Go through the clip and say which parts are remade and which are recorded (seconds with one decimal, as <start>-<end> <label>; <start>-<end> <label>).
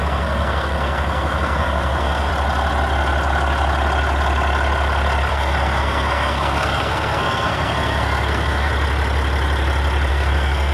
0.0-2.3 remade; 2.3-5.3 recorded; 5.3-8.7 remade; 8.7-10.1 recorded; 10.1-10.7 remade